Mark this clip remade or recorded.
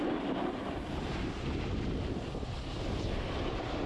recorded